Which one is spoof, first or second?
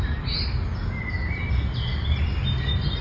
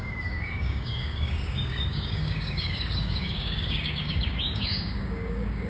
second